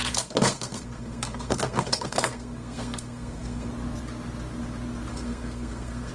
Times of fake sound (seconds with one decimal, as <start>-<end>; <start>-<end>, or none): 0.0-3.7; 5.1-6.1